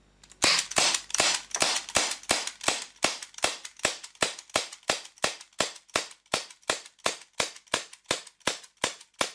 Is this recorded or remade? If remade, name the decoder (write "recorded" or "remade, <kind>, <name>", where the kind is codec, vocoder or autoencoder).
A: recorded